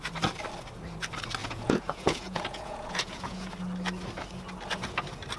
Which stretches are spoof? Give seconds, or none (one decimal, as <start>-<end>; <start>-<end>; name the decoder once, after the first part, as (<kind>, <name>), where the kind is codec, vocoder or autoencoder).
1.4-3.5 (vocoder, Vocos)